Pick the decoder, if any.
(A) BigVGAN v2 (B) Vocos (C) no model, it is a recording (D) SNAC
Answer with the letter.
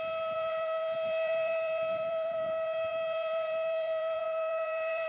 A